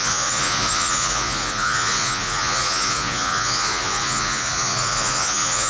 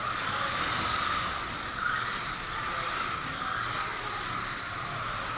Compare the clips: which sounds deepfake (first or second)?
first